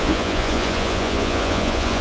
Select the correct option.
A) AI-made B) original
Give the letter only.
A